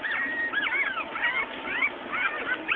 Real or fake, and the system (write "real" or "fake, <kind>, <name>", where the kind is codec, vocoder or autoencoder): real